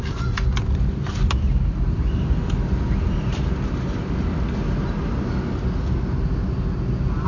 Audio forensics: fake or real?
real